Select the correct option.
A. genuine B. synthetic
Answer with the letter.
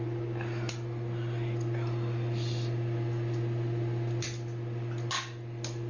A